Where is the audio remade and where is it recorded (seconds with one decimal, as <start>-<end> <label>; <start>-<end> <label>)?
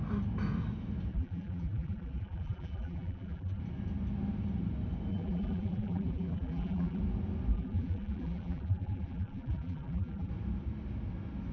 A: 0.0-1.1 recorded; 1.1-3.6 remade; 3.6-5.1 recorded; 5.1-7.0 remade; 7.0-7.5 recorded; 7.5-10.3 remade; 10.3-11.5 recorded